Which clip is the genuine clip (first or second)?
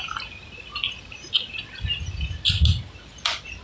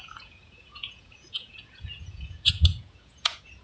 first